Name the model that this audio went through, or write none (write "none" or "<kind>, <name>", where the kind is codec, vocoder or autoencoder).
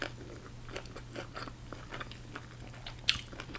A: none